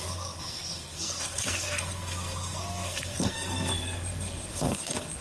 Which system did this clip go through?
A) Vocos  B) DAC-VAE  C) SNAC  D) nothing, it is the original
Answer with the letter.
C